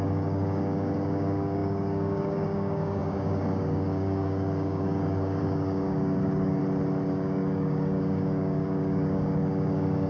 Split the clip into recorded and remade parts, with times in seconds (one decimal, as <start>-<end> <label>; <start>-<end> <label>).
0.0-6.6 remade; 6.6-7.1 recorded; 7.1-10.1 remade